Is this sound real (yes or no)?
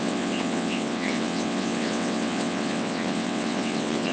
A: no